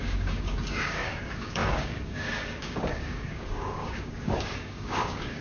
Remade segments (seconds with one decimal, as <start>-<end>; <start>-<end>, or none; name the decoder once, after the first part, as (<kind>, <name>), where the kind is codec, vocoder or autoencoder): 0.0-5.4 (codec, DAC)